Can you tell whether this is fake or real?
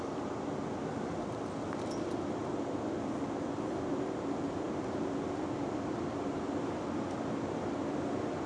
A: real